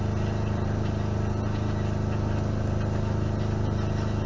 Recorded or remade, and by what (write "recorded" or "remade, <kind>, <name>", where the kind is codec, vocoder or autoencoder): recorded